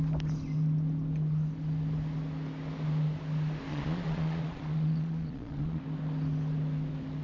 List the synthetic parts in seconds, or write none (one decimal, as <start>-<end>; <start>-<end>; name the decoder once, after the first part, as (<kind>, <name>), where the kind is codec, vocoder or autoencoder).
3.7-5.8 (vocoder, Vocos)